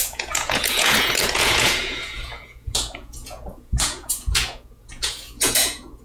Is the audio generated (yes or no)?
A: yes